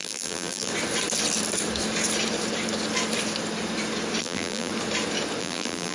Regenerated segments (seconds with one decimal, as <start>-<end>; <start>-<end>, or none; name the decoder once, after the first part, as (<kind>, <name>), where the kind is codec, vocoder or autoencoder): 0.0-0.7 (vocoder, BigVGAN v2); 4.2-4.7; 5.4-5.9